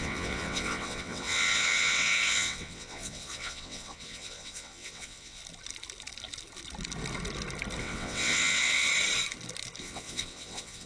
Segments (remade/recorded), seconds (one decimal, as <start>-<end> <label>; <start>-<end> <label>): 0.0-5.4 remade; 5.4-7.8 recorded; 7.8-8.9 remade; 8.9-9.8 recorded; 9.8-10.9 remade